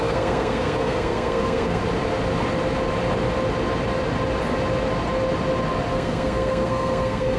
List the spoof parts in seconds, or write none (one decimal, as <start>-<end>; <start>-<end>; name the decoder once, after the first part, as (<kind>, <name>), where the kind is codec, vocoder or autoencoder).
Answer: 0.0-1.8 (codec, SNAC); 5.9-7.4